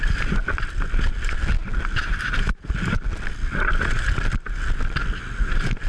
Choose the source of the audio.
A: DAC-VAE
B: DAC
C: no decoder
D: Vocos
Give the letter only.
C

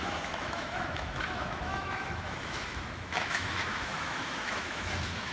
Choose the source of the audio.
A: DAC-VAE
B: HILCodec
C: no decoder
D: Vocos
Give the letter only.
A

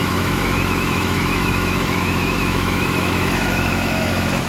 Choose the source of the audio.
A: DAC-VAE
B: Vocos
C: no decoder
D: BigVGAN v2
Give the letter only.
A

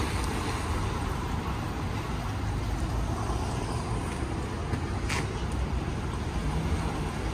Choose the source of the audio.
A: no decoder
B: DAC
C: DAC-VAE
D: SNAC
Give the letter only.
A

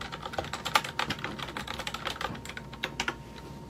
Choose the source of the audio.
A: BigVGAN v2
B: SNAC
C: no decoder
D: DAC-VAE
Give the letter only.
C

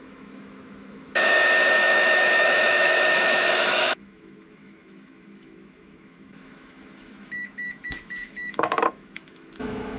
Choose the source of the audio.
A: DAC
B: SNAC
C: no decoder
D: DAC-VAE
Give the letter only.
D